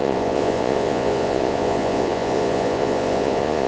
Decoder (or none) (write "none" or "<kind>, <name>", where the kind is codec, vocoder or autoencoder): vocoder, Vocos